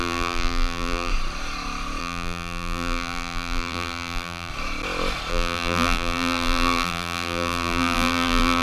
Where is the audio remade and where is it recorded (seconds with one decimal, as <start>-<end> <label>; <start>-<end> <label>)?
0.0-1.1 remade; 1.1-2.0 recorded; 2.0-4.5 remade; 4.5-5.3 recorded; 5.3-8.6 remade